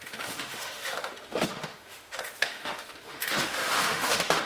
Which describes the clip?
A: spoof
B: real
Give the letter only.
A